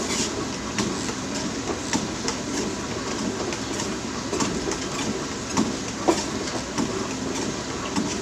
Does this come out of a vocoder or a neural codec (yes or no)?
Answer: no